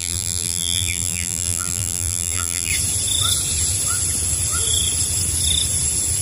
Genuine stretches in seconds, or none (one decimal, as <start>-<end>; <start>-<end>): 2.7-6.2